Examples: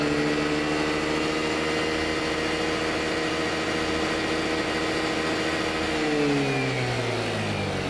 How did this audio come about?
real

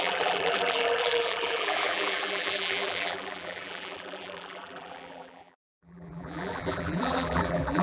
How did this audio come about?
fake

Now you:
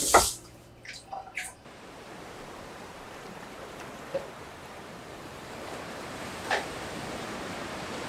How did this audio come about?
fake